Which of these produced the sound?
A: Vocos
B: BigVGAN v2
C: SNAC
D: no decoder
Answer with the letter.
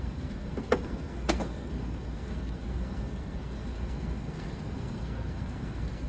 C